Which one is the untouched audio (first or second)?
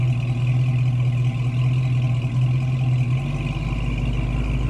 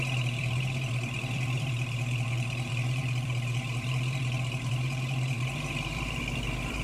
first